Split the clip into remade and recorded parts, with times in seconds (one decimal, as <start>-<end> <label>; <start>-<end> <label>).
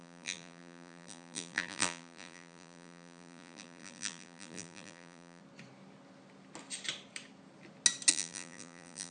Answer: 0.0-5.4 remade; 5.4-8.1 recorded; 8.1-9.1 remade